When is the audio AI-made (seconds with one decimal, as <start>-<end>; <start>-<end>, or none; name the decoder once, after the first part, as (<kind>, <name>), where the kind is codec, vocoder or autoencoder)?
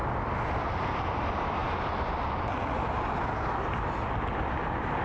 none